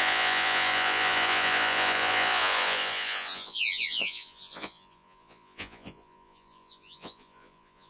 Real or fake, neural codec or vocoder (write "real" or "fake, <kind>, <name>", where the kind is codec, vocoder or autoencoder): fake, vocoder, Vocos